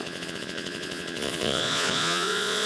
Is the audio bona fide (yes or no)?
no